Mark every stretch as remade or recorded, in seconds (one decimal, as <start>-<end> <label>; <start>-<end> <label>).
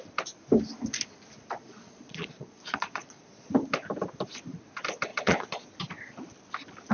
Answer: 0.0-1.6 recorded; 1.6-3.5 remade; 3.5-5.1 recorded; 5.1-5.7 remade; 5.7-6.9 recorded